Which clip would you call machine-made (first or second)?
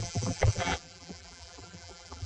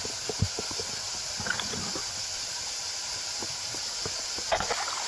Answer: first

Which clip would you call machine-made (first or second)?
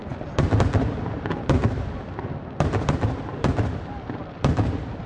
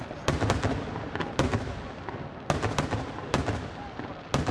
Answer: first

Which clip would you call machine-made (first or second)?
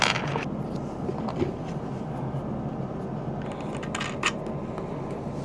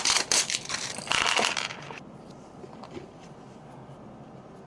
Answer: second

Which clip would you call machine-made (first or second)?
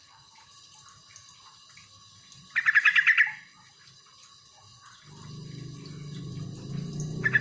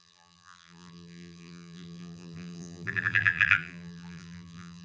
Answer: second